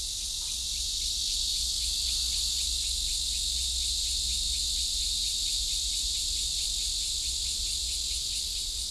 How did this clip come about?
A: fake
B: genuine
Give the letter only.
B